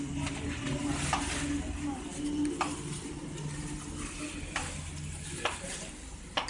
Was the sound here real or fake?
real